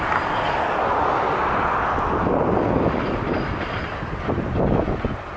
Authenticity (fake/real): real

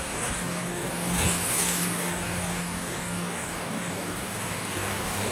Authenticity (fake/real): fake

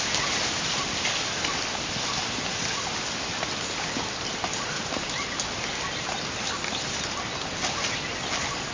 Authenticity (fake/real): real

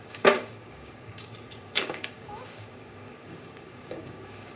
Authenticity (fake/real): fake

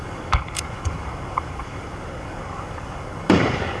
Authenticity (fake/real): fake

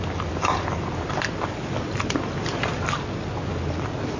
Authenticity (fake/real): real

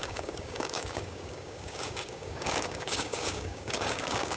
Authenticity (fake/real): fake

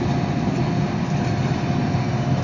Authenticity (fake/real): real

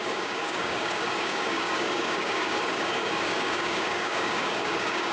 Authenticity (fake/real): fake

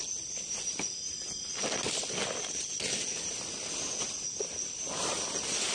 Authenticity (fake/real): real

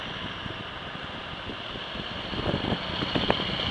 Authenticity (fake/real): real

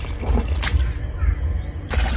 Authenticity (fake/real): real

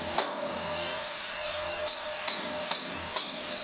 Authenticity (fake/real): fake